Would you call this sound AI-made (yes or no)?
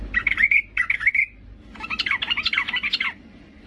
no